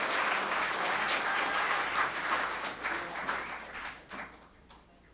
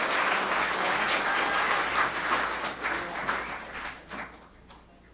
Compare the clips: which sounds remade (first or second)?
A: first